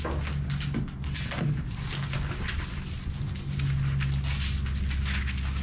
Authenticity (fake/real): real